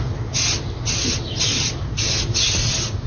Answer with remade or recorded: recorded